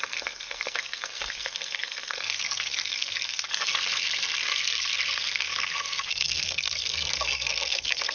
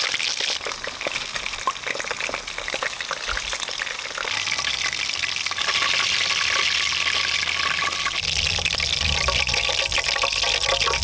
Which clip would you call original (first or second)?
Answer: second